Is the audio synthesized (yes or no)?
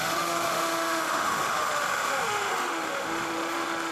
yes